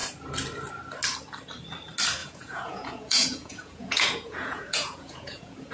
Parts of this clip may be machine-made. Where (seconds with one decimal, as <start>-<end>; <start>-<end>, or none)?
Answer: 2.2-5.7